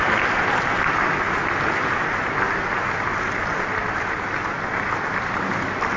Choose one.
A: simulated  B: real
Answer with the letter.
B